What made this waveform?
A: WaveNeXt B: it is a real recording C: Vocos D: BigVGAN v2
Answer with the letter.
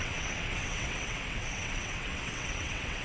A